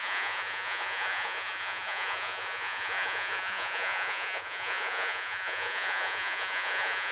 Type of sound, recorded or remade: remade